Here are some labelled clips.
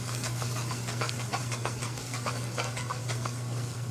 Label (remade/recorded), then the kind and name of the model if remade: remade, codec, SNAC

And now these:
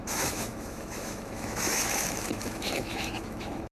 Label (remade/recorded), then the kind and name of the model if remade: remade, autoencoder, DAC-VAE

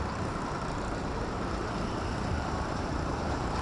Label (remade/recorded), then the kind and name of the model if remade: remade, vocoder, BigVGAN v2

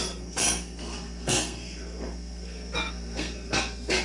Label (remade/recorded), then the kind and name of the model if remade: remade, codec, SNAC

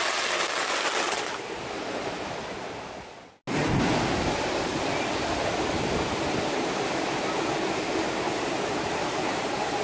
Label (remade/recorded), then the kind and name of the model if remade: recorded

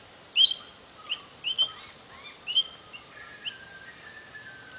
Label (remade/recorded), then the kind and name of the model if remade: recorded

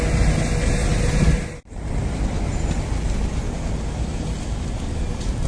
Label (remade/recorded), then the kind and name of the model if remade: recorded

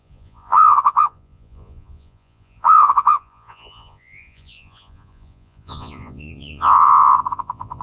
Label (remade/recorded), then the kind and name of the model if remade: remade, vocoder, Vocos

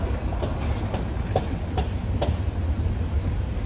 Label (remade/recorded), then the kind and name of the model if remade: recorded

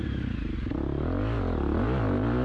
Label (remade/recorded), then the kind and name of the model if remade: recorded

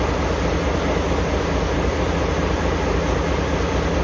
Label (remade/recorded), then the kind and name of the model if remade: recorded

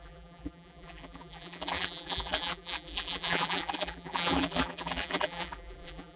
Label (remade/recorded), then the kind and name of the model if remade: remade, vocoder, BigVGAN v2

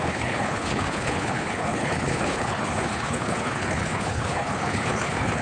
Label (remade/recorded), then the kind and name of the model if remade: remade, codec, HILCodec